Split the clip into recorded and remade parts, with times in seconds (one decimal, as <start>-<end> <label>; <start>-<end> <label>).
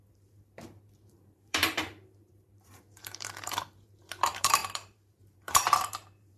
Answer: 0.0-6.4 remade